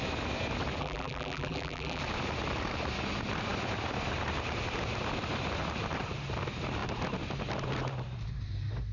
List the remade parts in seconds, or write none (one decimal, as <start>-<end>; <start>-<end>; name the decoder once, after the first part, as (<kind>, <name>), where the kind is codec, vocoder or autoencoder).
0.8-2.0 (vocoder, BigVGAN v2)